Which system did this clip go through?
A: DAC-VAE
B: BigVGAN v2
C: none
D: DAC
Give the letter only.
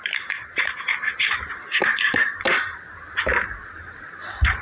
B